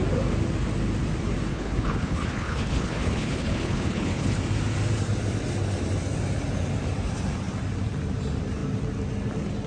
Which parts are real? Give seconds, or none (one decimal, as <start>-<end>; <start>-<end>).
0.0-1.5; 4.4-9.7